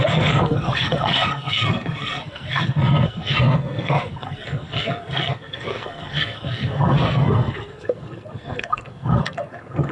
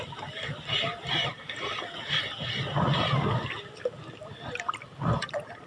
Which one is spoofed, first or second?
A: first